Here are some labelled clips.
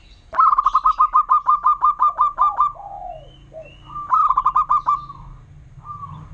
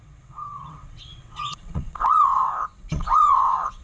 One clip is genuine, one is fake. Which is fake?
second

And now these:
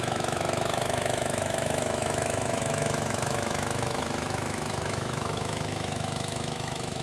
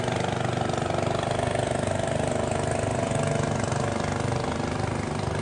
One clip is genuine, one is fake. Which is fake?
first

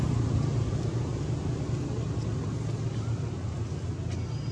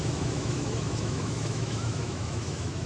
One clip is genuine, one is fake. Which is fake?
second